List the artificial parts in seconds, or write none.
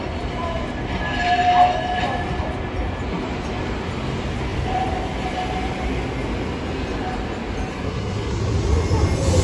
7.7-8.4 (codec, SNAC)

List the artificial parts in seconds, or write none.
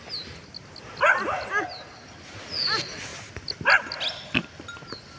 none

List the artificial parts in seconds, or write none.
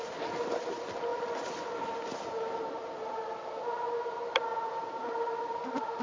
1.1-1.7 (vocoder, BigVGAN v2)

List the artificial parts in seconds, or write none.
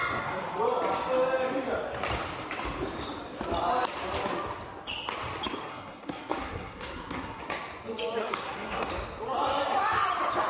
5.7-7.4 (codec, SNAC); 8.2-8.9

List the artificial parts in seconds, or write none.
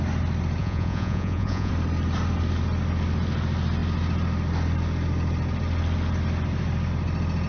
0.6-1.7 (vocoder, Vocos)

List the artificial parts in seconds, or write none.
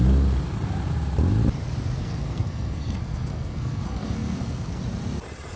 2.0-4.8 (codec, SNAC)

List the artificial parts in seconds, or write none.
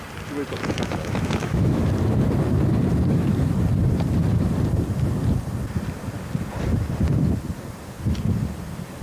0.6-1.9 (autoencoder, DAC-VAE)